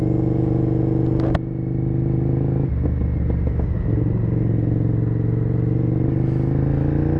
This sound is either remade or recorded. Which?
recorded